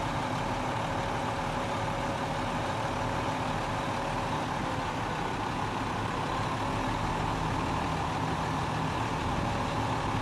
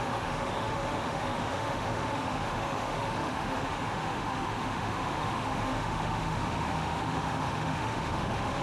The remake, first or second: second